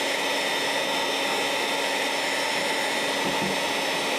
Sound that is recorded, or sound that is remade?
recorded